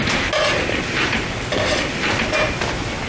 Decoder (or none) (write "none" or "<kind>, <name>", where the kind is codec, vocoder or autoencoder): none